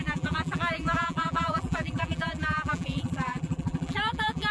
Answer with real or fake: fake